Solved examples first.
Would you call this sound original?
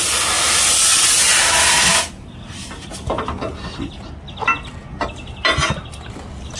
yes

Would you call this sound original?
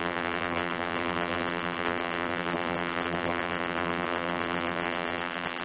no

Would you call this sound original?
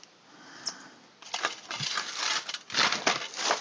yes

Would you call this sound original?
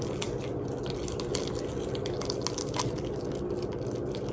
yes